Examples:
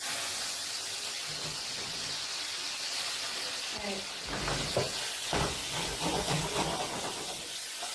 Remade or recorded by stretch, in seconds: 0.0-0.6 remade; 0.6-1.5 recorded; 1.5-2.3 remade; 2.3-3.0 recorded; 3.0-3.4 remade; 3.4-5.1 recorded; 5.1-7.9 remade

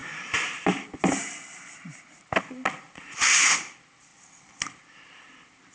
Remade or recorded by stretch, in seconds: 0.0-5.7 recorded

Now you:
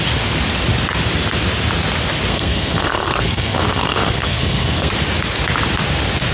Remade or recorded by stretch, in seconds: 0.0-2.3 recorded; 2.3-4.9 remade; 4.9-6.3 recorded

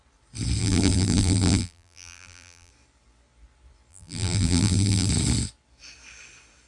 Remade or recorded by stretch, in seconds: 0.0-0.6 recorded; 0.6-2.7 remade; 2.7-3.9 recorded; 3.9-5.1 remade; 5.1-6.7 recorded

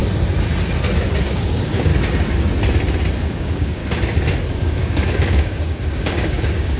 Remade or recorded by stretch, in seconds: 0.0-1.3 recorded; 1.3-1.9 remade; 1.9-3.2 recorded; 3.2-3.8 remade; 3.8-4.6 recorded; 4.6-6.8 remade

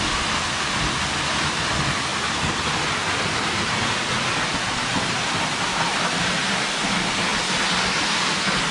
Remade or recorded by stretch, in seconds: 0.0-8.7 recorded

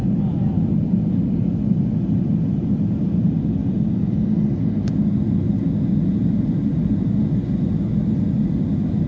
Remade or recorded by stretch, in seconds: 0.0-9.1 recorded